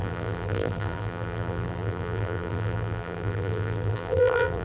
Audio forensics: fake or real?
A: fake